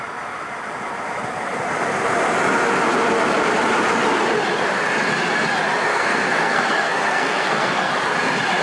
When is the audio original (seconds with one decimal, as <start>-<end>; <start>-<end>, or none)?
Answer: 0.0-5.9; 7.9-8.6